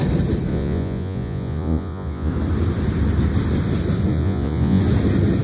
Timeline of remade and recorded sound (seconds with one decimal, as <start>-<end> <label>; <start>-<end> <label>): 0.0-0.5 recorded; 0.5-2.3 remade; 2.3-4.1 recorded; 4.1-4.8 remade; 4.8-5.4 recorded